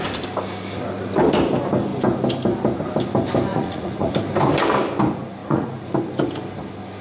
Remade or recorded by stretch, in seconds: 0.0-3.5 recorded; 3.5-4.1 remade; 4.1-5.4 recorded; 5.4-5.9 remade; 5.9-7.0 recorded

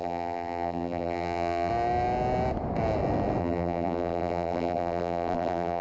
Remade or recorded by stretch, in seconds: 0.0-1.7 remade; 1.7-3.4 recorded; 3.4-5.8 remade

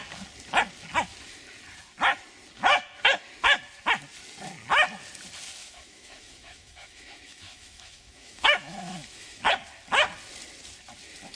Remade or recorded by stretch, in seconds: 0.0-5.6 recorded; 5.6-9.5 remade; 9.5-11.4 recorded

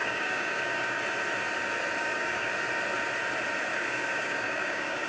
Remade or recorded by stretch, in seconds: 0.0-1.0 remade; 1.0-2.0 recorded; 2.0-2.5 remade; 2.5-3.7 recorded; 3.7-5.1 remade

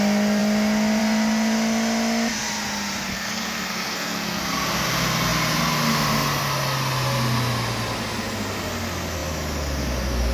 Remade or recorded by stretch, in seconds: 0.0-3.1 recorded; 3.1-4.4 remade; 4.4-10.3 recorded